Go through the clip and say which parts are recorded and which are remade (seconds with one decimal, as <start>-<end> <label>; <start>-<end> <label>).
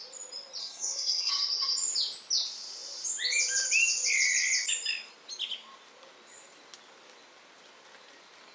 0.0-0.6 recorded; 0.6-1.3 remade; 1.3-8.5 recorded